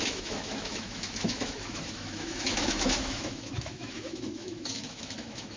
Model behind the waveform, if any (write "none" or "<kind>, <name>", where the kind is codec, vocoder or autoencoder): autoencoder, DAC-VAE